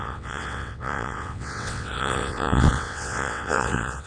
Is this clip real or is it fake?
fake